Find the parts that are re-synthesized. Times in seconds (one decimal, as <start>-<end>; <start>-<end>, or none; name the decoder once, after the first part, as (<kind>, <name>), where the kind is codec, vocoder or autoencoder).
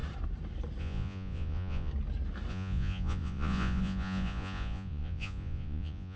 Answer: 0.8-1.9 (vocoder, Vocos); 2.5-6.2